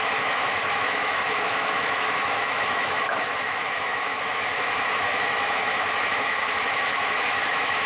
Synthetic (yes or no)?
yes